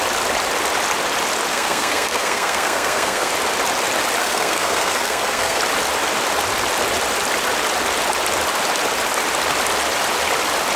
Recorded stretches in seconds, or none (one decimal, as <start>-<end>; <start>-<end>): 0.0-1.5; 3.3-4.2; 5.6-10.8